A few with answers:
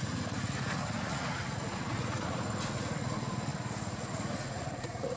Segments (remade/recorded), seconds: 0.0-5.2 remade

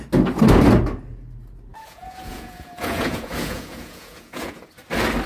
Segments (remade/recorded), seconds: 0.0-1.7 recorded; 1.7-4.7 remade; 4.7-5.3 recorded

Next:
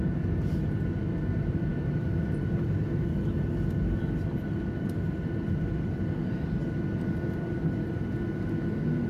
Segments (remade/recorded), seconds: 0.0-9.1 recorded

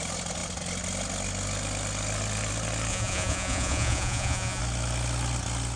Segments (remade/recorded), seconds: 0.0-2.9 recorded; 2.9-4.6 remade; 4.6-5.8 recorded

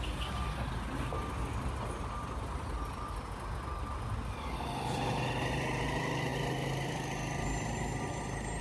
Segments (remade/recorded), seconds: 0.0-8.6 recorded

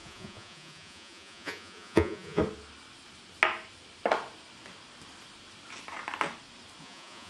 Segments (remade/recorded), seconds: 0.0-2.4 remade; 2.4-6.8 recorded; 6.8-7.3 remade

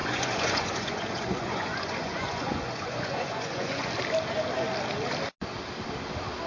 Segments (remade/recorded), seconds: 0.0-3.9 remade; 3.9-6.5 recorded

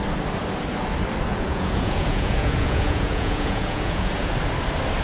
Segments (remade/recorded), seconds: 0.0-1.3 recorded; 1.3-4.3 remade; 4.3-5.0 recorded